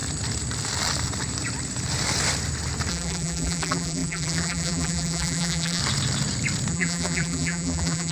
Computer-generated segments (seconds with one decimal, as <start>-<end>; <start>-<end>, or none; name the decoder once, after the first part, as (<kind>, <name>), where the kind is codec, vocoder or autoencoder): 2.9-5.8 (vocoder, BigVGAN v2); 6.7-8.1